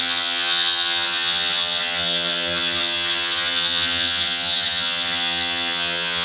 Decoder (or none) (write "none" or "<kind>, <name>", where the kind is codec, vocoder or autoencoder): vocoder, HiFi-GAN